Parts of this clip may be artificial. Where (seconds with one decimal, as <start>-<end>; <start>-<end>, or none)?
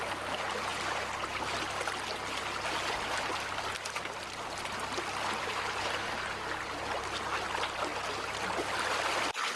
none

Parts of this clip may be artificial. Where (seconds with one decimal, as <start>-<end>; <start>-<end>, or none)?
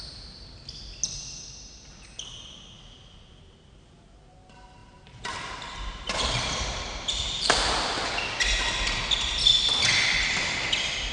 4.8-8.2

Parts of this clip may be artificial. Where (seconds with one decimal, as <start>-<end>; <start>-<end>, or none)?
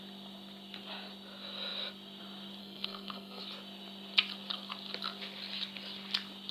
2.6-3.4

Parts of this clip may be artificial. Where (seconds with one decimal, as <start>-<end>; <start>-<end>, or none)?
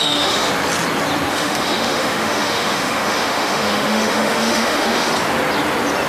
0.0-0.5; 1.3-5.1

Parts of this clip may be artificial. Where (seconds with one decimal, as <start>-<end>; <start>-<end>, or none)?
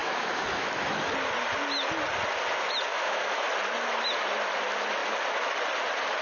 0.0-1.1; 2.9-3.5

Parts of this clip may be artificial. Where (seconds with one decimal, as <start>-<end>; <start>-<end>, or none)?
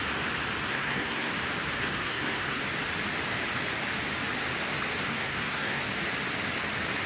0.7-1.3; 1.8-2.6; 5.1-5.8